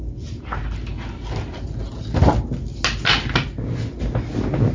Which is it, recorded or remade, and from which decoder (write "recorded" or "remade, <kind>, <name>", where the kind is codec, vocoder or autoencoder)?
recorded